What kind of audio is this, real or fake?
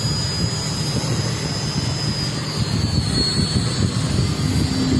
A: real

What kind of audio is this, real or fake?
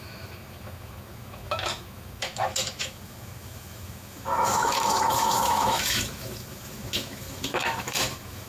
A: fake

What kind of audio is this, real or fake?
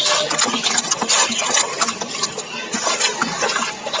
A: real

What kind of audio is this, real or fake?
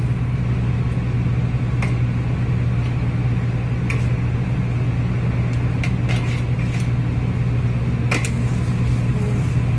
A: real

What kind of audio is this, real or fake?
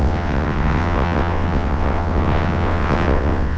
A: fake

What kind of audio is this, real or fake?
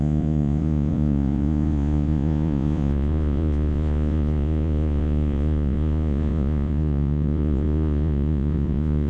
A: fake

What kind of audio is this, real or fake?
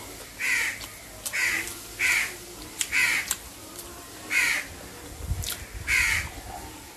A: real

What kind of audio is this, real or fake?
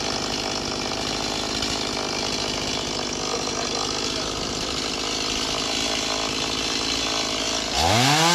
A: real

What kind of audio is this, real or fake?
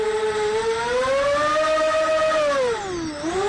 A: real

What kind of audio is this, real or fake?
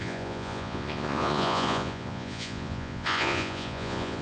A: fake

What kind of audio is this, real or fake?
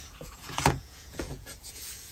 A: fake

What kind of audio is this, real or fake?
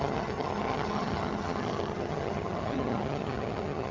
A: fake